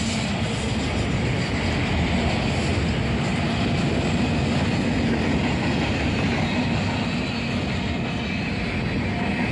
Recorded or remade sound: recorded